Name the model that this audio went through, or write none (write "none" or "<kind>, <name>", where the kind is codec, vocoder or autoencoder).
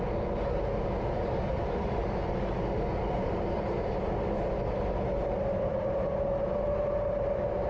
none